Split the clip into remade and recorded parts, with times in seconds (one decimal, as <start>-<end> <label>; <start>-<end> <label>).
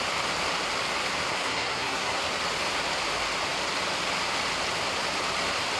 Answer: 0.0-1.3 recorded; 1.3-2.2 remade; 2.2-5.8 recorded